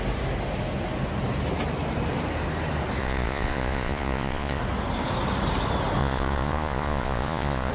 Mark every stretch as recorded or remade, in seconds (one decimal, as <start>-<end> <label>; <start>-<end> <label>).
0.0-3.0 recorded; 3.0-4.6 remade; 4.6-6.0 recorded; 6.0-7.7 remade